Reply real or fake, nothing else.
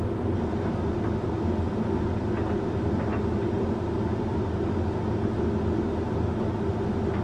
real